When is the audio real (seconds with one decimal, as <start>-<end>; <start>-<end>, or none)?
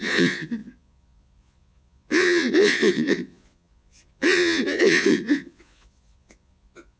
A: none